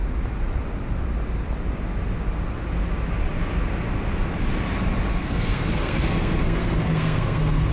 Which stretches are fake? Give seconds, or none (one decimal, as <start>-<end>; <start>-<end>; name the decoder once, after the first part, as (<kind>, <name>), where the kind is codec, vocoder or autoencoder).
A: 5.1-7.7 (codec, SNAC)